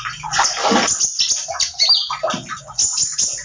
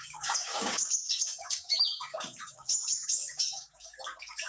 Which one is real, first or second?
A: first